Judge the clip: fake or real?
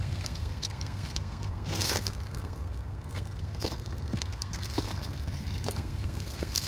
fake